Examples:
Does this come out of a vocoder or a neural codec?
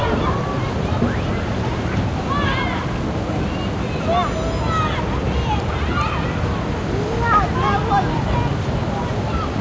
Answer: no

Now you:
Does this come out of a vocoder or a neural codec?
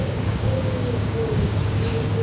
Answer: yes